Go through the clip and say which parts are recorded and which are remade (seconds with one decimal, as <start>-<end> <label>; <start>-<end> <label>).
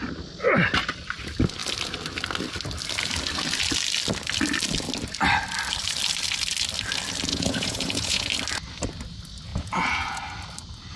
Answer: 0.0-7.3 recorded; 7.3-8.3 remade; 8.3-9.5 recorded; 9.5-10.2 remade; 10.2-11.0 recorded